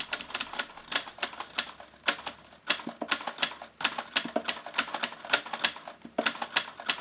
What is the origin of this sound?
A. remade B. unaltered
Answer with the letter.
B